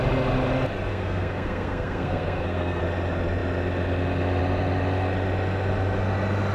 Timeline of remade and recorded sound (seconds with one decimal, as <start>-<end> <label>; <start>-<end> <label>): 0.0-0.9 recorded; 0.9-2.8 remade; 2.8-6.5 recorded